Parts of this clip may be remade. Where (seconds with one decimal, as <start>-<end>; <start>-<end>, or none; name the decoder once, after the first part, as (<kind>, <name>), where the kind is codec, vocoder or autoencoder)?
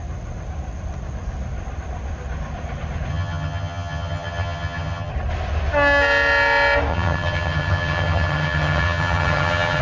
3.1-5.1 (vocoder, HiFi-GAN); 6.9-9.8